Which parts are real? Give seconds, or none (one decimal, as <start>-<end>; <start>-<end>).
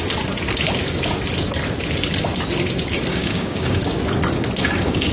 0.0-3.1; 3.8-4.6